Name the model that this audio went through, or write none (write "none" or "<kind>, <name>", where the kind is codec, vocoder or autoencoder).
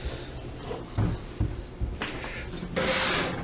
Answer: none